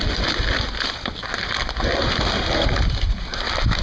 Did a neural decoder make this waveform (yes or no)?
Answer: no